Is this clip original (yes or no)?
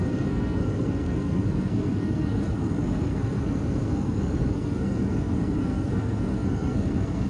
no